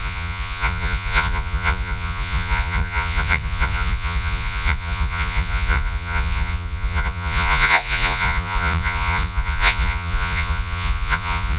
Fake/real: fake